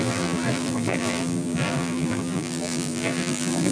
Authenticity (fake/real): fake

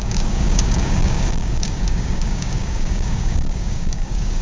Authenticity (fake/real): fake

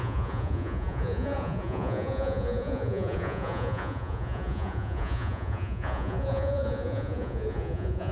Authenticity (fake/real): fake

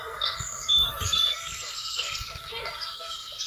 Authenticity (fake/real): fake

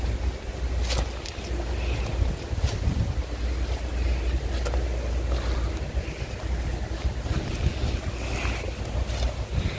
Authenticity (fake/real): real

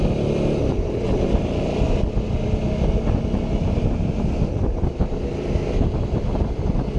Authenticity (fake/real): real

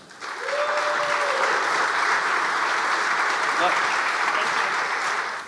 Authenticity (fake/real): real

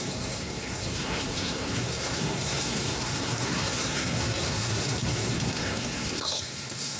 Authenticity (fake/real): fake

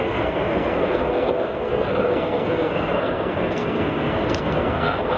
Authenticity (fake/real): fake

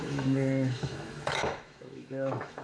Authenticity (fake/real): fake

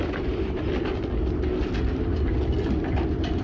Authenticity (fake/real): real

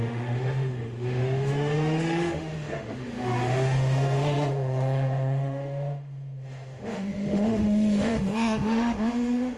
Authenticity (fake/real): fake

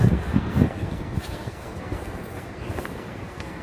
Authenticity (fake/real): fake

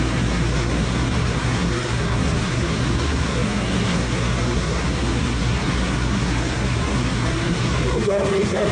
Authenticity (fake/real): fake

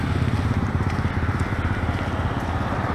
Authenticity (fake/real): real